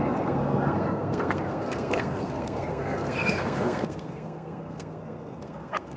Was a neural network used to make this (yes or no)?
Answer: yes